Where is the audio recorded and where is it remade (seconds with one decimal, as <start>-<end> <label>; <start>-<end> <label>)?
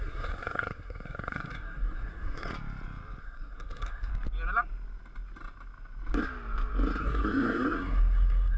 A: 0.0-2.5 remade; 2.5-3.2 recorded; 3.2-4.1 remade; 4.1-7.0 recorded; 7.0-8.6 remade